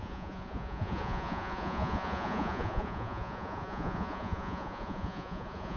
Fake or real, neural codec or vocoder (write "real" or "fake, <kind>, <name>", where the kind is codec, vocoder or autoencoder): fake, vocoder, Vocos